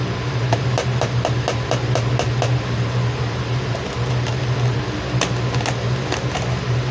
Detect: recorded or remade recorded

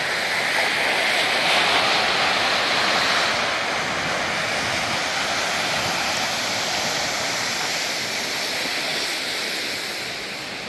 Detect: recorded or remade recorded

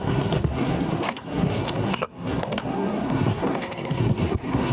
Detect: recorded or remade remade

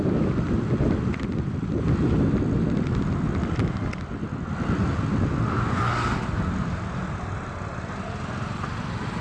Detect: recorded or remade recorded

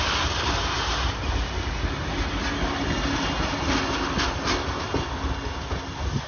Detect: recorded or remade recorded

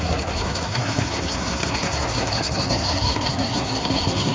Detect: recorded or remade remade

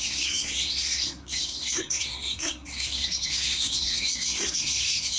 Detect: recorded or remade remade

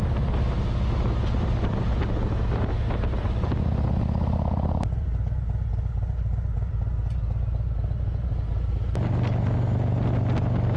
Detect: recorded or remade recorded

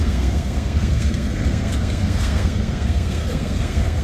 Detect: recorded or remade remade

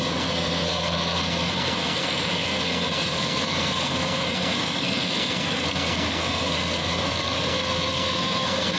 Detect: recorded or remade remade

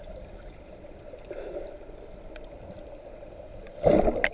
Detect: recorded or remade recorded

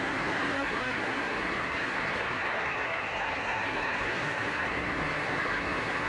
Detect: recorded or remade remade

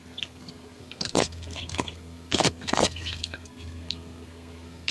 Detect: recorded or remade remade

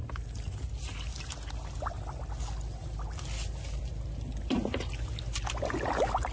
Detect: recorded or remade recorded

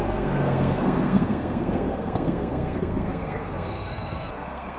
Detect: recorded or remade remade